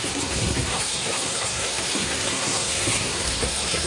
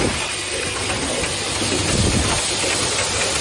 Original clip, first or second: second